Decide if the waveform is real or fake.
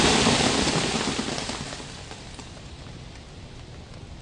real